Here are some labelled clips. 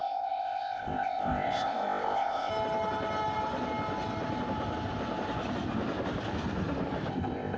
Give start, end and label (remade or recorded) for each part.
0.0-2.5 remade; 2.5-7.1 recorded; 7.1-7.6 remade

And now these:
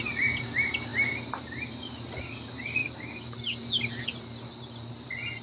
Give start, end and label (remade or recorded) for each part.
0.0-2.8 recorded; 2.8-3.3 remade; 3.3-5.4 recorded